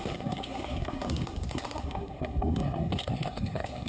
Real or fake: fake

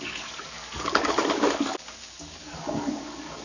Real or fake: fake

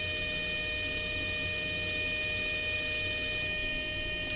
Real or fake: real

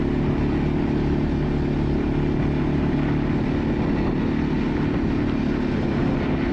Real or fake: real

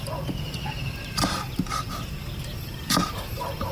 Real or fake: real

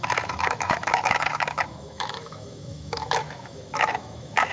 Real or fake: fake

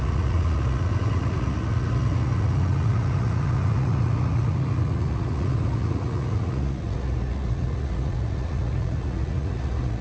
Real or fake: fake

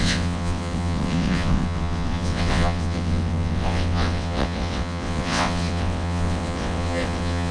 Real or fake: fake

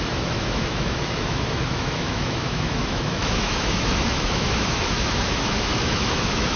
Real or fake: fake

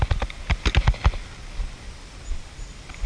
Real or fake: real